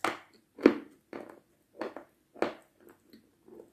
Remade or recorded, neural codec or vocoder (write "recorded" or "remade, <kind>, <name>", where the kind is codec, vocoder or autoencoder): recorded